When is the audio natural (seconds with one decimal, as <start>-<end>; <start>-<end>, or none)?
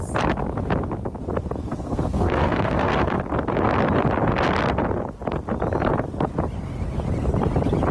0.0-1.6; 3.2-7.9